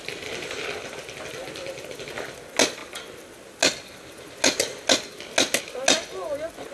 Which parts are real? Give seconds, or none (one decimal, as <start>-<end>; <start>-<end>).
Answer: 0.0-6.7